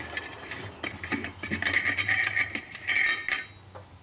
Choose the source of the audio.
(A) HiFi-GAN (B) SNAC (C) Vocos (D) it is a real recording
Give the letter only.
D